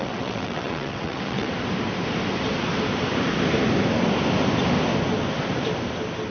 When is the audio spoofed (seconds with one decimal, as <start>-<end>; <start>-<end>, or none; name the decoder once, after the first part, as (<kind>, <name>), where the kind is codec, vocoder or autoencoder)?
0.0-1.5 (vocoder, WaveNeXt)